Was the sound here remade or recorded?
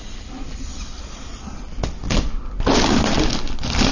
recorded